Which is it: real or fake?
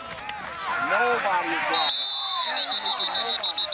real